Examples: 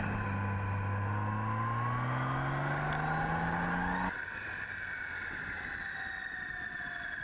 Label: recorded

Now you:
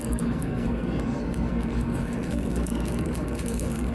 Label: remade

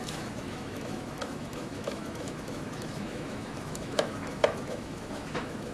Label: remade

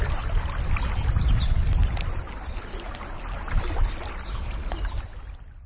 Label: recorded